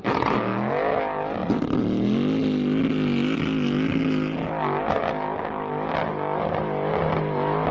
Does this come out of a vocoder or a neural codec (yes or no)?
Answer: no